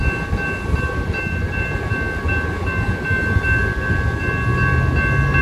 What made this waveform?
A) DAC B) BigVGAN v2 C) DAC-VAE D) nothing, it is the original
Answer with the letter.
D